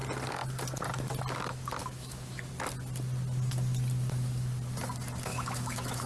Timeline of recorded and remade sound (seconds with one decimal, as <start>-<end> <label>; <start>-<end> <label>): 0.0-1.8 recorded; 1.8-2.5 remade; 2.5-5.3 recorded; 5.3-6.1 remade

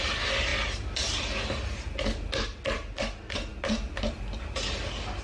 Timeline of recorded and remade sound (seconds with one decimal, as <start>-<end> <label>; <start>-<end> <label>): 0.0-5.2 recorded

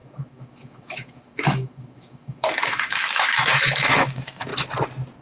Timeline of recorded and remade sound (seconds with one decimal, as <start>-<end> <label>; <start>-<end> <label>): 0.0-4.5 remade; 4.5-5.2 recorded

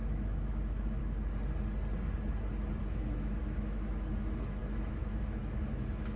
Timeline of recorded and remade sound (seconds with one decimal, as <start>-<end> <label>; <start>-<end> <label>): 0.0-1.0 remade; 1.0-2.8 recorded; 2.8-6.2 remade

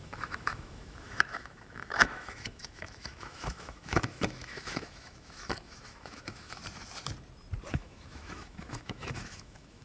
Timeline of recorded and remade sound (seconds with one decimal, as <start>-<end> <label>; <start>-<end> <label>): 0.0-6.6 remade; 6.6-7.7 recorded; 7.7-9.8 remade

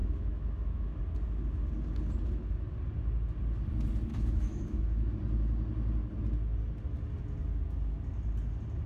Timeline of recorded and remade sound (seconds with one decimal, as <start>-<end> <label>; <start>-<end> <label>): 0.0-1.0 remade; 1.0-4.1 recorded; 4.1-5.1 remade; 5.1-8.9 recorded

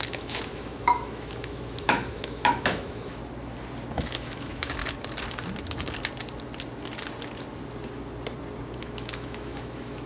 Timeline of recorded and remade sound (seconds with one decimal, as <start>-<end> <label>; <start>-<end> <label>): 0.0-3.2 remade; 3.2-3.9 recorded; 3.9-4.8 remade; 4.8-8.8 recorded; 8.8-10.1 remade

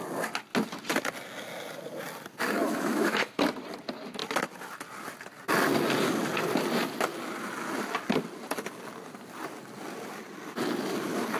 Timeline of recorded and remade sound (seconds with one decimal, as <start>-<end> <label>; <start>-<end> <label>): 0.0-2.6 recorded; 2.6-3.4 remade; 3.4-11.4 recorded